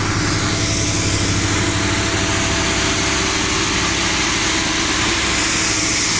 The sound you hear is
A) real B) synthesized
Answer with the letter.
A